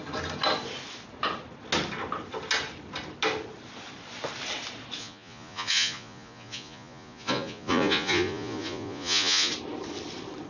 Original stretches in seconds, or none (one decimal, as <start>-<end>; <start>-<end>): 0.0-5.0; 9.5-10.5